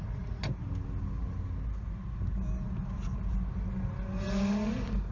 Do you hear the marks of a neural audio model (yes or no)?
no